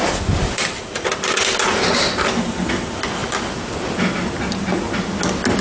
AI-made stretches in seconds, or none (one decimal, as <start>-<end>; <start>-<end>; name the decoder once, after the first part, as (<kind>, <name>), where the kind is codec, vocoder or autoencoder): none